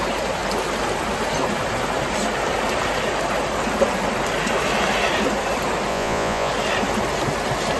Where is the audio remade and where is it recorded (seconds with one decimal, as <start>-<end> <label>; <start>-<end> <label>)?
0.0-5.9 recorded; 5.9-6.5 remade; 6.5-7.8 recorded